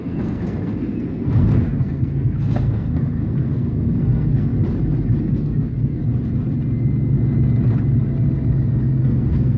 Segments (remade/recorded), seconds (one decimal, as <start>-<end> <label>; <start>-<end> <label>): 0.0-4.5 remade; 4.5-5.2 recorded; 5.2-6.0 remade; 6.0-9.0 recorded; 9.0-9.6 remade